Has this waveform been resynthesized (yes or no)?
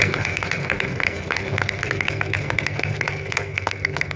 yes